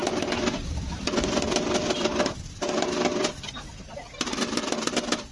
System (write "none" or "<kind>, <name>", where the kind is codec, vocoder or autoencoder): vocoder, BigVGAN v2